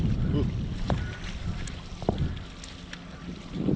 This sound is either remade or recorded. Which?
recorded